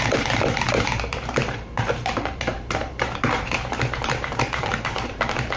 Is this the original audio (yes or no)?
no